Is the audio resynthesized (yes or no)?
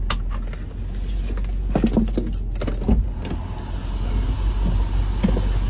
no